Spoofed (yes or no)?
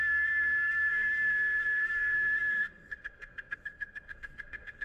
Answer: yes